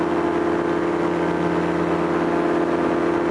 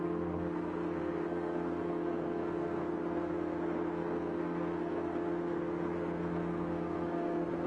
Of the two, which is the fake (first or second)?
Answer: second